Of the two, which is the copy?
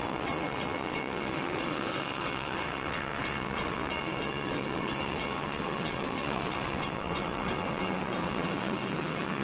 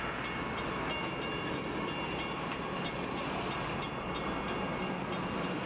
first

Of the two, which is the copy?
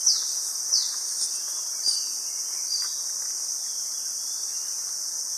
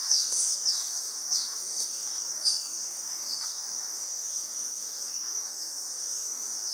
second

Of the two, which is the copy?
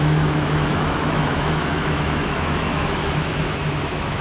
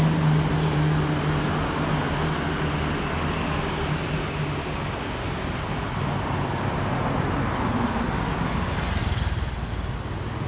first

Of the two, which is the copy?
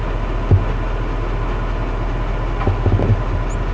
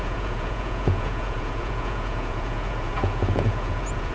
second